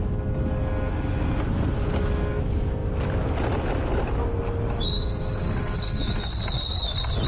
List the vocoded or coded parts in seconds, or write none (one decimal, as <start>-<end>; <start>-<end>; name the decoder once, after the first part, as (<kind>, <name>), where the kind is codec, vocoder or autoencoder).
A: none